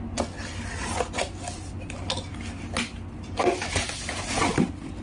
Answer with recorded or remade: recorded